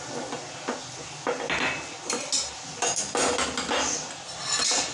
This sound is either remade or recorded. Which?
recorded